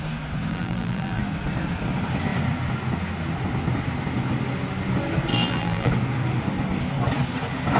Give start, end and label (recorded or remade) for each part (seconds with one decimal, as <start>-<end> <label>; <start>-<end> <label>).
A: 0.0-0.5 recorded; 0.5-1.2 remade; 1.2-5.3 recorded; 5.3-5.9 remade; 5.9-7.8 recorded